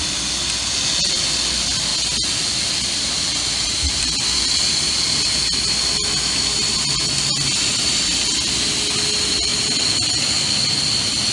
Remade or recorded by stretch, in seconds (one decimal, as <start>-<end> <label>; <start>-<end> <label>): 0.0-11.3 recorded